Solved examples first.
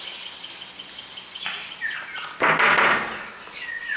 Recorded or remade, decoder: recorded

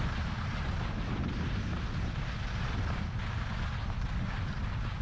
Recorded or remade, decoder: recorded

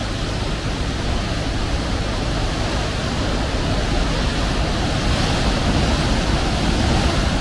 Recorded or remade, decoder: recorded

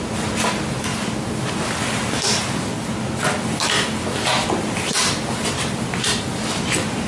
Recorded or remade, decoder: recorded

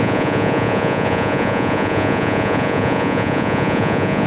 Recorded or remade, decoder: remade, vocoder, Vocos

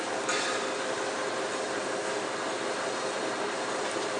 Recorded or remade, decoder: recorded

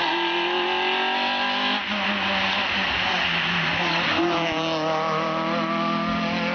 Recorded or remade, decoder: recorded